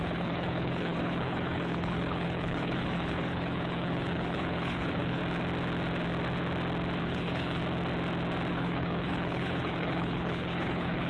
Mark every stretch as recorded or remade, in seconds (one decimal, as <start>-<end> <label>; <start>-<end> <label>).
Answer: 0.0-5.2 remade; 5.2-7.0 recorded; 7.0-7.6 remade; 7.6-8.5 recorded; 8.5-11.1 remade